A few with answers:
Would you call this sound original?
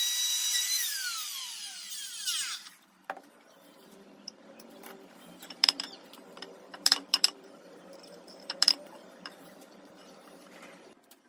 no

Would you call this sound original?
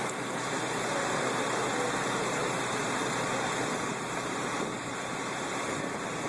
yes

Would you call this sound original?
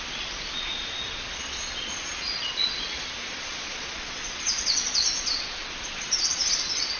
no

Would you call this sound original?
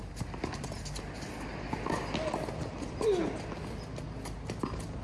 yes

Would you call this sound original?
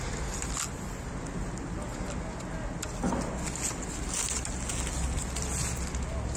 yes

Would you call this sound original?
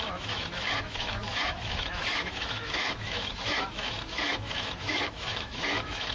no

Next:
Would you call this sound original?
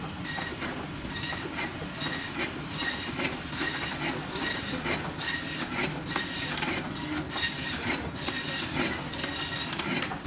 yes